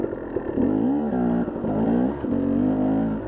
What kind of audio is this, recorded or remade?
recorded